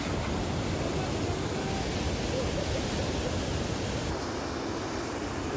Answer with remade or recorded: recorded